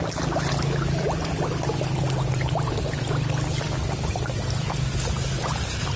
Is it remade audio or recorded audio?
recorded